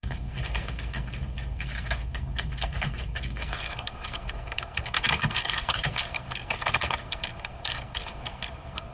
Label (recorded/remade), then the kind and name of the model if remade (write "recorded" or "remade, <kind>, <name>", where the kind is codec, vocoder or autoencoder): remade, codec, SNAC